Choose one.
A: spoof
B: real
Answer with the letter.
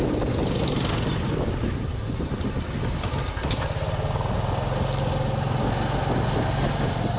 B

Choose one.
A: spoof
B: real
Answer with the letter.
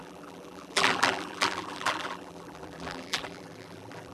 A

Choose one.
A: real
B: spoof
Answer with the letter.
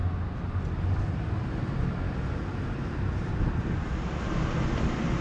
A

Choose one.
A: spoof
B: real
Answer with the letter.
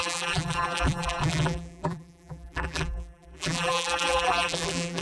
A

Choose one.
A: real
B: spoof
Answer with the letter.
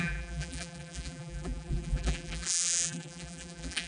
B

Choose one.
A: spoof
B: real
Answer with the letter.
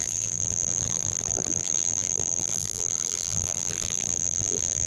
A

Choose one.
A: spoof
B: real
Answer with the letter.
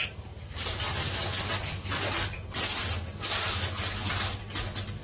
B